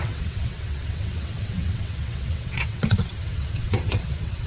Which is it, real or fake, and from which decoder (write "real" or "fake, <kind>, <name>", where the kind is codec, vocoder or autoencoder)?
fake, vocoder, WaveNeXt